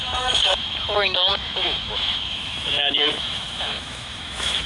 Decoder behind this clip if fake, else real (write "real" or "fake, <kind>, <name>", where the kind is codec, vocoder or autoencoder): fake, autoencoder, DAC-VAE